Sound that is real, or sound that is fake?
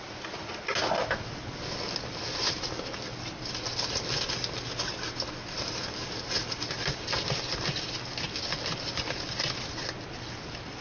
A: real